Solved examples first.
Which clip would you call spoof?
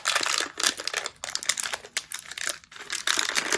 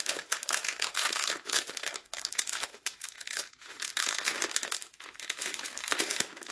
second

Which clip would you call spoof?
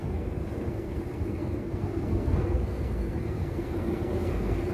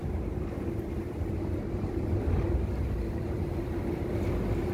first